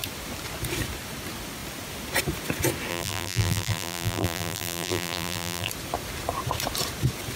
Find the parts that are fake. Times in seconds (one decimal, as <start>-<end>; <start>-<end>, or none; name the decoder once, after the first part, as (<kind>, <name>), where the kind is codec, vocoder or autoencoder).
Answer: 2.9-5.7 (vocoder, BigVGAN v2)